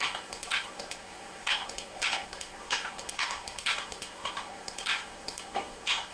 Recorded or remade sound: remade